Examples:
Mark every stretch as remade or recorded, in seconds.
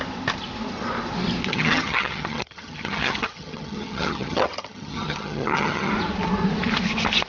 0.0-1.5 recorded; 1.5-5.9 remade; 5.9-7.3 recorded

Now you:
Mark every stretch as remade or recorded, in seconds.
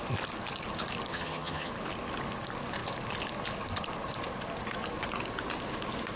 0.0-1.1 recorded; 1.1-1.7 remade; 1.7-6.2 recorded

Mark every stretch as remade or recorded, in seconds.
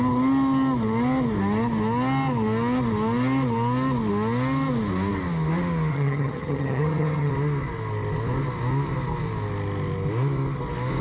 0.0-5.9 recorded; 5.9-7.3 remade; 7.3-11.0 recorded